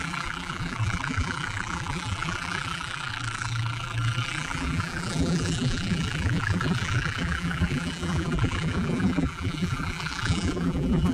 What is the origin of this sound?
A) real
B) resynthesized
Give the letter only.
B